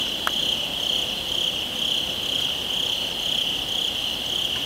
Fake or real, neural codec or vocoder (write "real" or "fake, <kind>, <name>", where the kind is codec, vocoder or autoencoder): real